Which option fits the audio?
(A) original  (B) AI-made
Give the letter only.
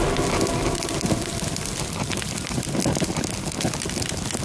A